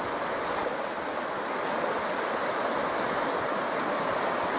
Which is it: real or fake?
real